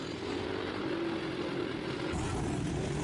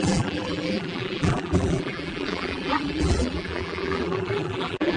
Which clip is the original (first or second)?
first